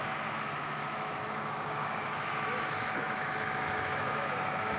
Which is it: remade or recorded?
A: remade